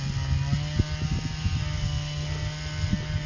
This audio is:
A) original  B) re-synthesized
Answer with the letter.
A